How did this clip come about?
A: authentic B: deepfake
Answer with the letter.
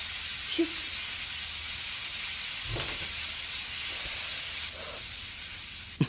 A